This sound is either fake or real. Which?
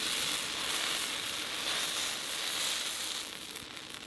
real